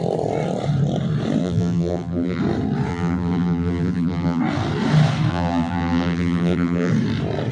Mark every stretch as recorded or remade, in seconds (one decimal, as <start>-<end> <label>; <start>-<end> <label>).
0.0-1.4 recorded; 1.4-2.4 remade; 2.4-2.9 recorded; 2.9-4.4 remade; 4.4-5.3 recorded; 5.3-6.9 remade; 6.9-7.5 recorded